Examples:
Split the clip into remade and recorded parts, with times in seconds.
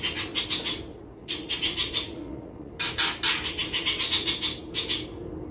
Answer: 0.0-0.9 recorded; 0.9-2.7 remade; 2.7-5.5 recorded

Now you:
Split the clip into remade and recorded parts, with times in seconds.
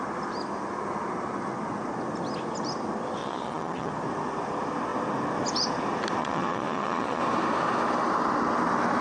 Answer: 0.0-3.2 recorded; 3.2-3.9 remade; 3.9-6.2 recorded; 6.2-7.2 remade; 7.2-9.0 recorded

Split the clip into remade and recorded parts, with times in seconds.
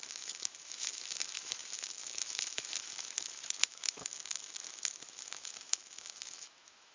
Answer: 0.0-6.9 remade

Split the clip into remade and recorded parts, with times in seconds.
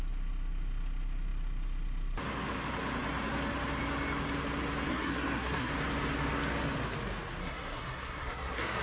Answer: 0.0-4.9 recorded; 4.9-5.7 remade; 5.7-7.4 recorded; 7.4-8.8 remade